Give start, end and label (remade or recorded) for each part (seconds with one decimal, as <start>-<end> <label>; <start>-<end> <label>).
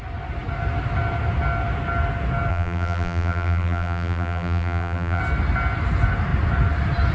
0.0-2.5 recorded; 2.5-5.2 remade; 5.2-7.1 recorded